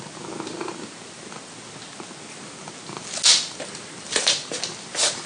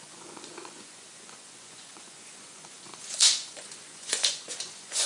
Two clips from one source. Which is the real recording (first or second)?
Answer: first